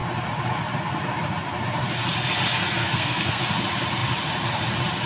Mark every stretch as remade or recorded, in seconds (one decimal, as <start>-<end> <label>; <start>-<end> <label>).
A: 0.0-2.8 recorded; 2.8-3.4 remade; 3.4-5.1 recorded